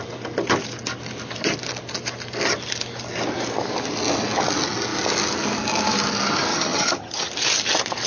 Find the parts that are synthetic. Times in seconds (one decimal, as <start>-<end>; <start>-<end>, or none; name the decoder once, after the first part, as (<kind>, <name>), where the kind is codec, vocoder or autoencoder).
6.5-7.3 (vocoder, HiFi-GAN)